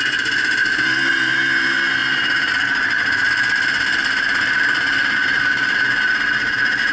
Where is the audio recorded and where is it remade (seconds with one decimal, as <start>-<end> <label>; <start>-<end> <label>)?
0.0-6.9 recorded